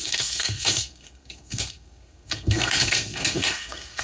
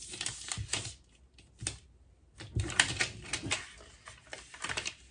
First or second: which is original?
second